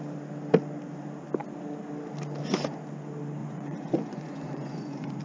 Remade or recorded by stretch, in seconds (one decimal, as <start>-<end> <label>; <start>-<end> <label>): 0.0-3.4 recorded; 3.4-5.2 remade